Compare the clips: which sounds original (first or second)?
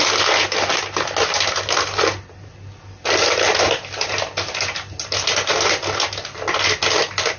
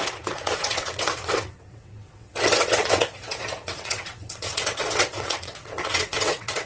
first